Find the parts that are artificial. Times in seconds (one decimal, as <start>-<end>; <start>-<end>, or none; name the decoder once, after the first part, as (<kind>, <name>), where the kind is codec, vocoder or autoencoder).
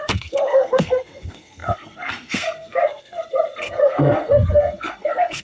0.0-5.4 (codec, SNAC)